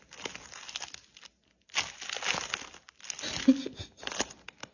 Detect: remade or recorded recorded